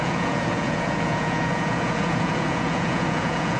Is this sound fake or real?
fake